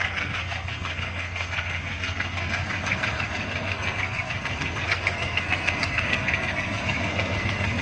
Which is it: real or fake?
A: fake